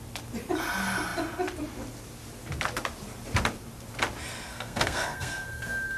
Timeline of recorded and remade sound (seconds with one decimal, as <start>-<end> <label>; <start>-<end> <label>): 0.0-4.5 recorded; 4.5-6.0 remade